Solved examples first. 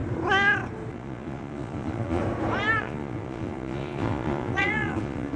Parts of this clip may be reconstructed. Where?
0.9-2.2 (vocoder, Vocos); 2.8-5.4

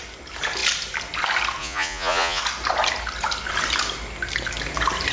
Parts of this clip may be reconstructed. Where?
1.6-2.4 (vocoder, Vocos)

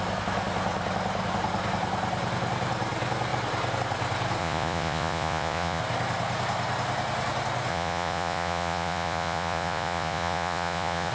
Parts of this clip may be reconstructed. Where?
4.4-5.8 (vocoder, Vocos); 7.7-11.1

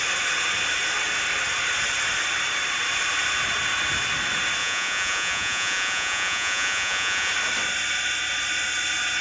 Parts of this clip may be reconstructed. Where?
4.6-7.3 (vocoder, Vocos)